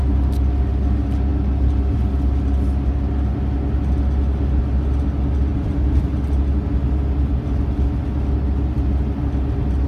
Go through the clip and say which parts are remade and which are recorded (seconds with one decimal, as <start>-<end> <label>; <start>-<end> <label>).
0.0-9.9 recorded